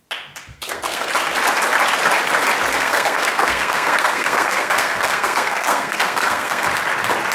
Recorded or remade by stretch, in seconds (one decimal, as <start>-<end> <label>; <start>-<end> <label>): 0.0-0.5 recorded; 0.5-1.1 remade; 1.1-2.7 recorded; 2.7-6.7 remade; 6.7-7.3 recorded